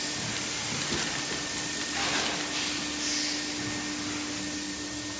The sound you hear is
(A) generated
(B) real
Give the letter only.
B